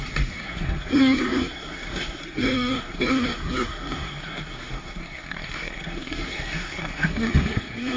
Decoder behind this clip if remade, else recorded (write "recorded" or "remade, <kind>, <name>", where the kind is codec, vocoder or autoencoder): remade, codec, SNAC